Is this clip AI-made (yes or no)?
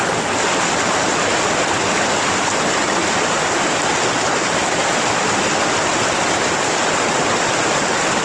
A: no